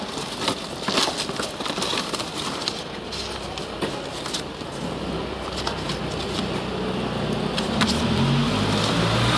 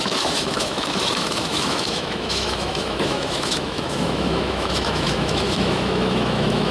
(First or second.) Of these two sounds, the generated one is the second